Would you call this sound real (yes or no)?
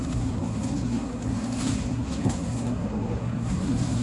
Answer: no